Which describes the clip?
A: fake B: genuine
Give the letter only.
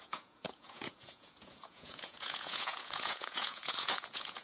A